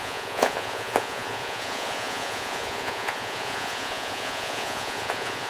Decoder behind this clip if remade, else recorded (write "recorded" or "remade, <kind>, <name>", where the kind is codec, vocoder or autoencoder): remade, vocoder, Vocos